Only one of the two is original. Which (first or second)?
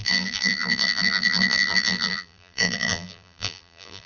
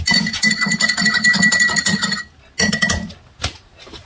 second